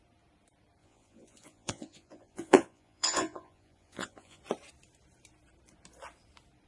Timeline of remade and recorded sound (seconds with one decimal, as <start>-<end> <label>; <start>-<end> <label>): 0.0-0.8 recorded; 0.8-4.4 remade; 4.4-6.7 recorded

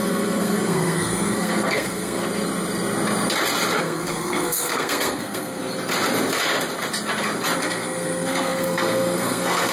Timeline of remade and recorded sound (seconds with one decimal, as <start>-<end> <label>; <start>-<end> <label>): 0.0-2.2 remade; 2.2-3.8 recorded; 3.8-5.6 remade; 5.6-7.6 recorded; 7.6-9.7 remade

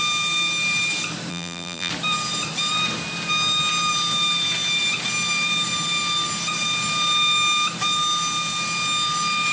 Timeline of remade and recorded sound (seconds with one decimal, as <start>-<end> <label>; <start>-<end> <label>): 0.0-1.3 recorded; 1.3-1.9 remade; 1.9-9.5 recorded

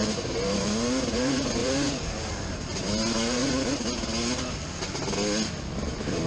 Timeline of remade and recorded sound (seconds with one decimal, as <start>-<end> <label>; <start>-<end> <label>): 0.0-3.4 remade; 3.4-5.7 recorded; 5.7-6.3 remade

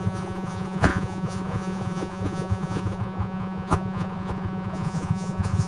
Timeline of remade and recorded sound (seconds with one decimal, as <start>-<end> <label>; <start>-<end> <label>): 0.0-5.7 remade